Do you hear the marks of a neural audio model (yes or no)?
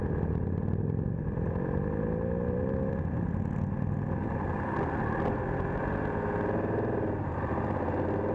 no